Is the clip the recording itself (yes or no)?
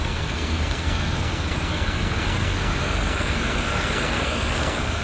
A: no